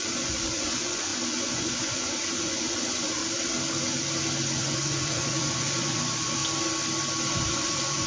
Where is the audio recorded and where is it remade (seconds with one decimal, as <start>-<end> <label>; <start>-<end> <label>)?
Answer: 0.0-3.2 remade; 3.2-4.4 recorded; 4.4-6.4 remade; 6.4-7.5 recorded; 7.5-8.1 remade